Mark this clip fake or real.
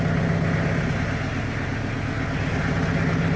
real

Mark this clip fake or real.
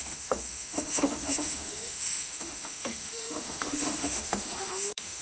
fake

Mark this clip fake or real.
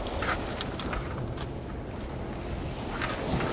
real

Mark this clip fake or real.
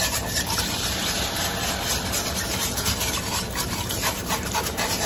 fake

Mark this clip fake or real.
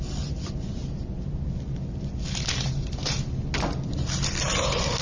real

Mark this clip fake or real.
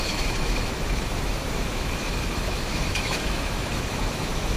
fake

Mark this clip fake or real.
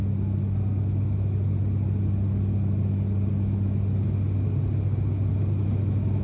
real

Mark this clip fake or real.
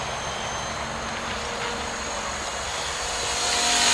real